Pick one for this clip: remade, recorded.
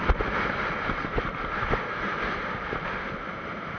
remade